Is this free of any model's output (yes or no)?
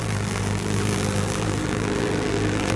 no